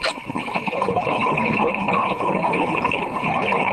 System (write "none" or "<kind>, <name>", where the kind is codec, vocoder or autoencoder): codec, HILCodec